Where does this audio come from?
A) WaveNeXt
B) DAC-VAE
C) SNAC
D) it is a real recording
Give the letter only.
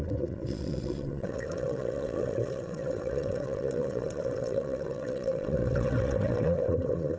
A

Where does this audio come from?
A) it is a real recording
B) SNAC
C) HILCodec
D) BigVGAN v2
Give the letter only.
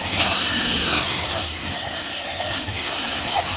B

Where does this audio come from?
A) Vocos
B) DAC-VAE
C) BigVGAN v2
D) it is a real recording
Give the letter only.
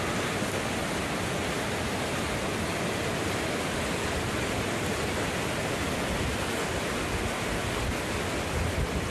D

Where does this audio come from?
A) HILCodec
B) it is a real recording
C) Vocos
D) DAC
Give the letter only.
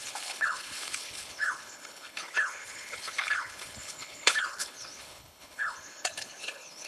A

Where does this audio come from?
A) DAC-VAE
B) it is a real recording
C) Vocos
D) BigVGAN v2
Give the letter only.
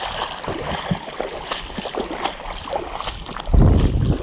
B